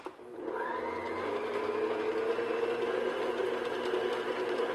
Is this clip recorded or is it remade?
recorded